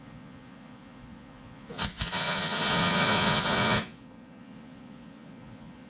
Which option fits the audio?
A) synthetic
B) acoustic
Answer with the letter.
A